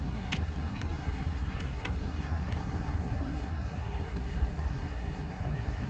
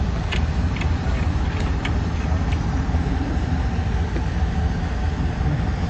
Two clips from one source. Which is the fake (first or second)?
first